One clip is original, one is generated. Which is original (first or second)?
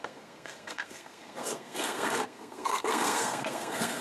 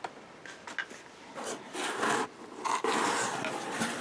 second